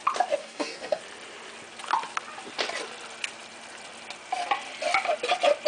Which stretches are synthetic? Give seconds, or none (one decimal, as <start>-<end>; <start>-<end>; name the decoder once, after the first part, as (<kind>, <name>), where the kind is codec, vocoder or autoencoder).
0.4-1.0 (codec, DAC)